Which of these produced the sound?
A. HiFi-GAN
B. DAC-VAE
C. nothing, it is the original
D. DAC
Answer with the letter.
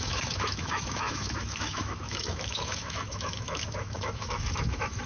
B